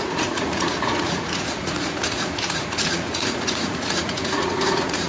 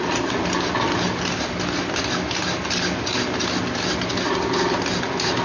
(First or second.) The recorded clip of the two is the second